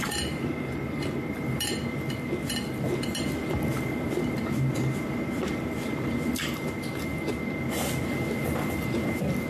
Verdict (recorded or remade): remade